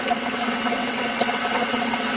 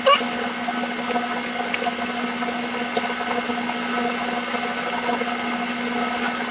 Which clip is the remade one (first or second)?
first